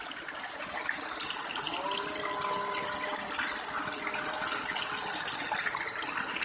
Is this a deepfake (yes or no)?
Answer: no